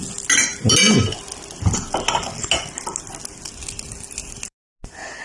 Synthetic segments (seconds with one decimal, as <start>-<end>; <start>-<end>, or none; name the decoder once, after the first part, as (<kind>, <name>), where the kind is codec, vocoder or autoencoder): none